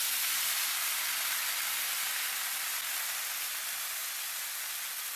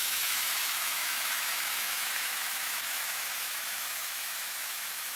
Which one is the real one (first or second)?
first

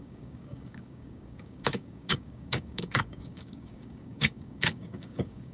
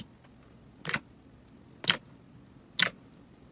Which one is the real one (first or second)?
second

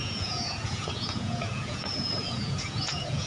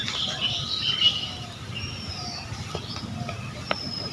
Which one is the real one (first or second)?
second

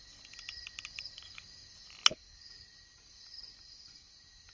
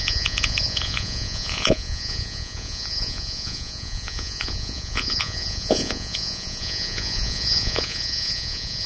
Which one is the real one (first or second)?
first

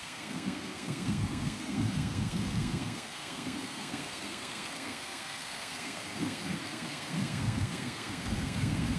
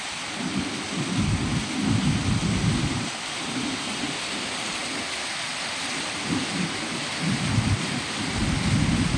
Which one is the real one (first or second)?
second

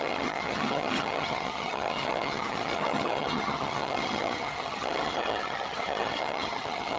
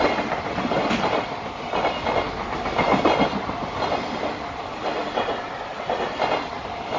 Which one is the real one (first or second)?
second